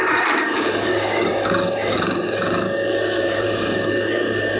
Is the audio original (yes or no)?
no